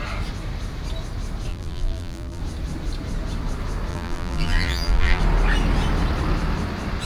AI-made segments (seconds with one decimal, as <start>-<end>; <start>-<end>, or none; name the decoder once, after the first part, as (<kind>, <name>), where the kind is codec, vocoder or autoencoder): 1.5-2.4 (vocoder, BigVGAN v2); 3.9-5.2